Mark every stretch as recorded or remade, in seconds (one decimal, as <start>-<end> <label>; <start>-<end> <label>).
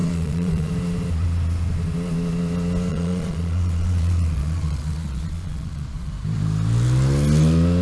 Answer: 0.0-0.7 remade; 0.7-2.9 recorded; 2.9-6.1 remade; 6.1-7.8 recorded